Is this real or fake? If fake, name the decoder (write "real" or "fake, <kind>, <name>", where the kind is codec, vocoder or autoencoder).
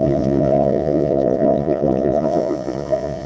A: fake, vocoder, Vocos